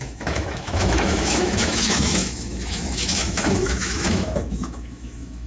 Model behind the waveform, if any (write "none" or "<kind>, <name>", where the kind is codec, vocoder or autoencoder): autoencoder, DAC-VAE